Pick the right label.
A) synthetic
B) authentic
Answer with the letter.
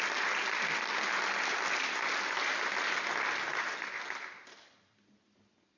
B